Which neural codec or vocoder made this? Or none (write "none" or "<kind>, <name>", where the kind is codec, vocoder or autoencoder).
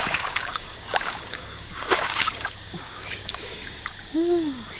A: codec, DAC